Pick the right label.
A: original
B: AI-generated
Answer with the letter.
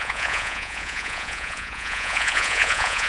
B